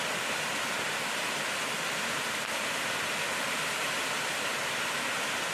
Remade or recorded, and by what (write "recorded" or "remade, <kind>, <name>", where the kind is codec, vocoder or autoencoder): recorded